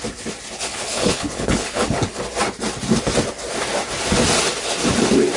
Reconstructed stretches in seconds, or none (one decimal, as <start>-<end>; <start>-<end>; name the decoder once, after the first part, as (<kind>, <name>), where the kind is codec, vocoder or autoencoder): 0.7-2.2 (codec, HILCodec)